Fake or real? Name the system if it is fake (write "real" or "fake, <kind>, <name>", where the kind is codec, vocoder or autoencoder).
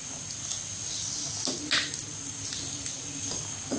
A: real